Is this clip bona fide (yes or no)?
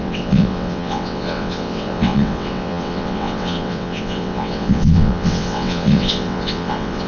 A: no